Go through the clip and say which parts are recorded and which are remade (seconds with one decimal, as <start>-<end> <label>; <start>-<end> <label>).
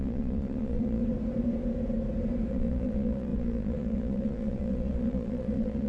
0.0-1.0 remade; 1.0-2.5 recorded; 2.5-5.9 remade